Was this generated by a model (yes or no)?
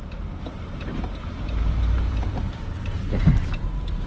yes